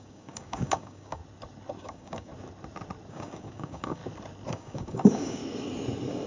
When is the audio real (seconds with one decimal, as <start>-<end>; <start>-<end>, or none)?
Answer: 1.2-1.8; 2.3-3.1; 4.0-4.5; 5.4-6.3